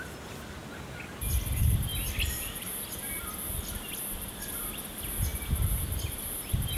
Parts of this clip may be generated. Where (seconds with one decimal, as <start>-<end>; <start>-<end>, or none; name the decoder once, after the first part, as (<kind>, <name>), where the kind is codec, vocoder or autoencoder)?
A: none